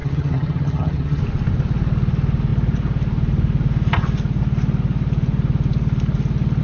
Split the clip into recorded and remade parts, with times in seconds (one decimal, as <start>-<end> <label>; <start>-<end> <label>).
0.0-1.2 remade; 1.2-6.6 recorded